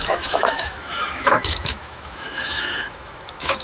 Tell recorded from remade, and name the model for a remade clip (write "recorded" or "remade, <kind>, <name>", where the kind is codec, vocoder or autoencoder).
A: remade, autoencoder, DAC-VAE